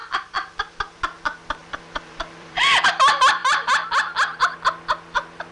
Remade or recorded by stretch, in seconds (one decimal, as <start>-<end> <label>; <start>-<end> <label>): 0.0-0.7 remade; 0.7-1.6 recorded; 1.6-2.6 remade; 2.6-3.4 recorded; 3.4-4.4 remade; 4.4-5.5 recorded